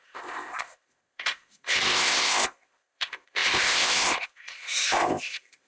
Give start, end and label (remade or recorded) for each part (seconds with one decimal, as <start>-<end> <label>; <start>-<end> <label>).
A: 0.0-5.7 remade

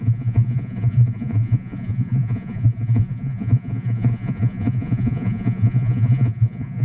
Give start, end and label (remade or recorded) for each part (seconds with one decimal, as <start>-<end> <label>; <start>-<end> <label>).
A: 0.0-6.8 remade

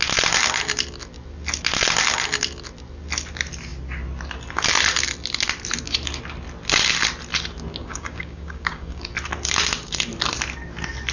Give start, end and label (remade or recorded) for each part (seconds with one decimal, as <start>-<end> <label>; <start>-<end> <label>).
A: 0.0-7.8 recorded; 7.8-9.0 remade; 9.0-11.1 recorded

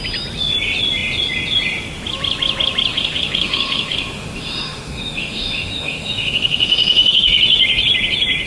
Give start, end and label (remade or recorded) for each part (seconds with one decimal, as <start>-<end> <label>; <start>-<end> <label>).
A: 0.0-2.9 recorded; 2.9-7.4 remade; 7.4-8.5 recorded

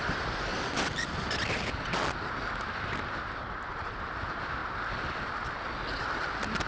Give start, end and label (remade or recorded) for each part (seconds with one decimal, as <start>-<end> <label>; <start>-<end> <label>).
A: 0.0-0.5 remade; 0.5-2.9 recorded; 2.9-4.6 remade; 4.6-6.7 recorded

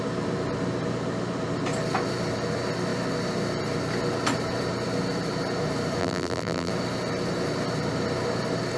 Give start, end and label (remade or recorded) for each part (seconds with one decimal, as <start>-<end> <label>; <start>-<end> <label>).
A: 0.0-6.0 recorded; 6.0-6.7 remade; 6.7-8.8 recorded

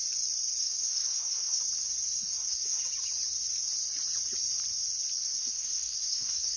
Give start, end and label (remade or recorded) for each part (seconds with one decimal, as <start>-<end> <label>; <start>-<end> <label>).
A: 0.0-0.6 recorded; 0.6-1.6 remade; 1.6-2.2 recorded; 2.2-2.8 remade; 2.8-5.4 recorded; 5.4-6.6 remade